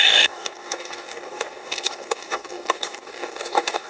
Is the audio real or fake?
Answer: fake